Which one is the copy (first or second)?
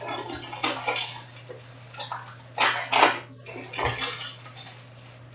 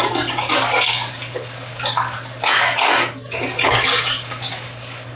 second